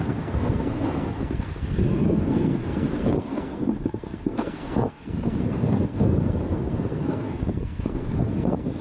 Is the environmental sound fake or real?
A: fake